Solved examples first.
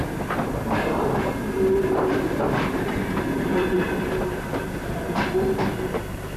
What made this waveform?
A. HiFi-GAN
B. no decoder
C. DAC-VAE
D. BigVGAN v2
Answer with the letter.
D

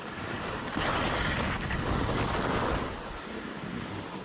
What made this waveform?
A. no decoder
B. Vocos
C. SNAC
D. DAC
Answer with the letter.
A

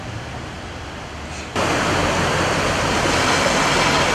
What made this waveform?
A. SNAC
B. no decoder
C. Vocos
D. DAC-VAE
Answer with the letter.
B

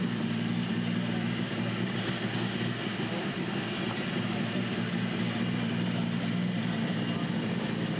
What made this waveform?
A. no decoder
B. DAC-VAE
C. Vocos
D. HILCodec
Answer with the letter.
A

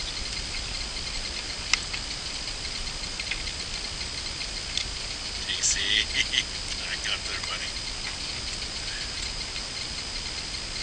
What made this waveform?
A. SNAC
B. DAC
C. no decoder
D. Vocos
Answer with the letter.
C